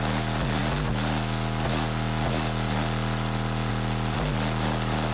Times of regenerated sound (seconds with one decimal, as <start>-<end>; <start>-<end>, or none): none